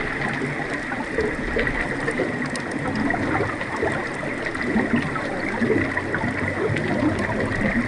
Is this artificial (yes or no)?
no